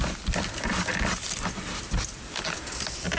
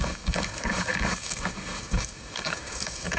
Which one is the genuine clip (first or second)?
first